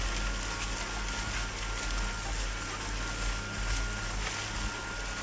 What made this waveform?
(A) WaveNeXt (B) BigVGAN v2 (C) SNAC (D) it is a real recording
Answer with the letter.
D